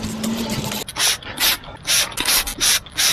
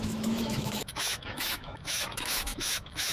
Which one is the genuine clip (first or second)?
first